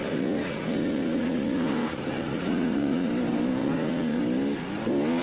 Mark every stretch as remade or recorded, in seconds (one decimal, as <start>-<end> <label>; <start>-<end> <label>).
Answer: 0.0-3.1 remade; 3.1-3.6 recorded; 3.6-4.2 remade; 4.2-5.2 recorded